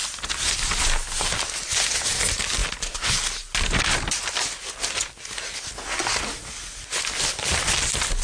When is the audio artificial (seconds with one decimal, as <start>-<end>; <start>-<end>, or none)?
none